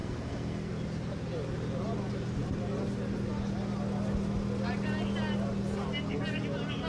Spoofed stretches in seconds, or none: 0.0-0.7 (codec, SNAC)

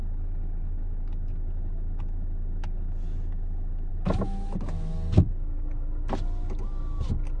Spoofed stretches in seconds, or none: none

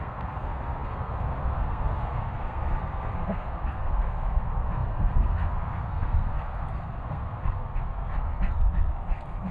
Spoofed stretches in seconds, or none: 0.0-9.5 (codec, SNAC)

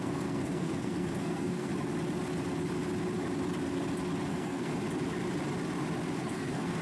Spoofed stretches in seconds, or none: 0.0-1.7 (codec, SNAC); 4.3-4.7; 6.2-6.8

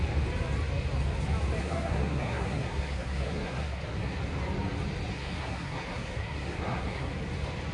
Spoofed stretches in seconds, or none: 1.6-4.2 (codec, SNAC); 5.1-7.1

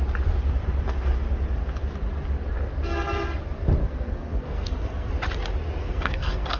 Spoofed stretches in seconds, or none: 3.8-5.1 (codec, SNAC); 5.8-6.6